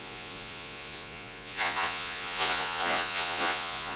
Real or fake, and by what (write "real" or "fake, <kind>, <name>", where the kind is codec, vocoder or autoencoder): fake, vocoder, Vocos